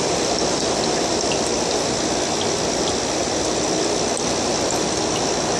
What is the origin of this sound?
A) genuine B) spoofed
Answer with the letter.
A